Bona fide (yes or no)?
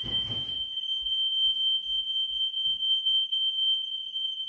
yes